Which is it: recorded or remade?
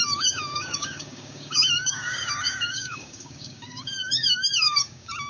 remade